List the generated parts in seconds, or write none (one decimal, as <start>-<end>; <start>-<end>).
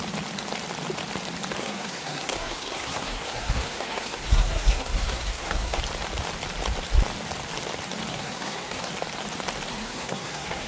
1.6-5.8; 8.1-8.9; 9.7-10.7